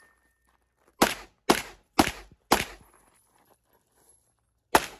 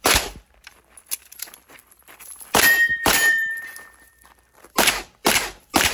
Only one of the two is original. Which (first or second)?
first